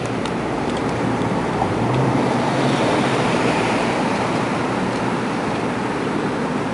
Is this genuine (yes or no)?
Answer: no